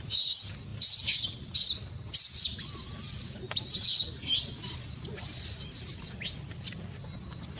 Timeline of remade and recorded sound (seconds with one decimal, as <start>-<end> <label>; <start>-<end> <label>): 0.0-0.7 recorded; 0.7-1.9 remade; 1.9-7.6 recorded